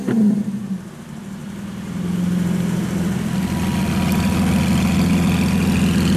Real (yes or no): yes